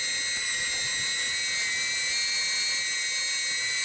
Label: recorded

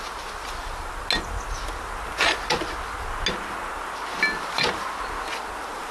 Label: recorded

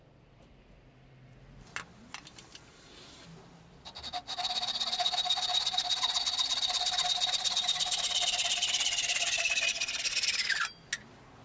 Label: recorded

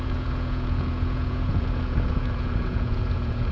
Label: remade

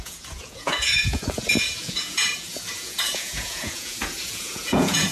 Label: remade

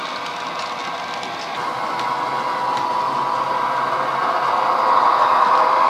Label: recorded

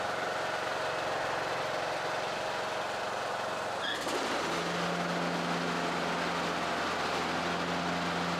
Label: recorded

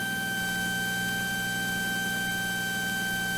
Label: recorded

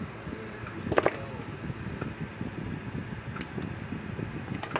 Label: recorded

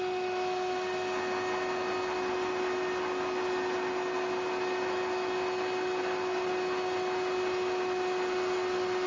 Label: recorded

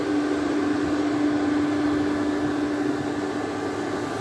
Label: recorded